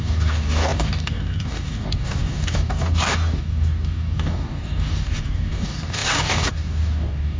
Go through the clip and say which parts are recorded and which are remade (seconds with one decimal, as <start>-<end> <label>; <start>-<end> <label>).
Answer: 0.0-7.4 remade